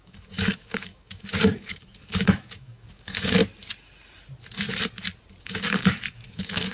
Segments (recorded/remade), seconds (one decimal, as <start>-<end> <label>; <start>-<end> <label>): 0.0-3.4 remade; 3.4-5.4 recorded; 5.4-6.7 remade